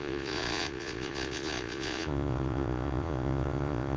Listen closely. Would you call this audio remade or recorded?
remade